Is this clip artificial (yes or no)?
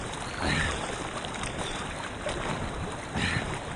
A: yes